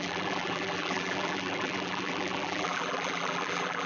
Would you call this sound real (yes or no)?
no